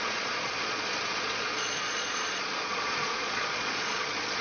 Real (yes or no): no